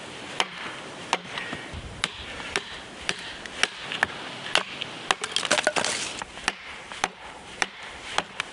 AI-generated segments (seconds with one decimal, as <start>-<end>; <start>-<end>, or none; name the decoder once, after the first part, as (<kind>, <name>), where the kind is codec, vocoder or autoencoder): 0.0-3.3 (vocoder, BigVGAN v2); 6.1-8.5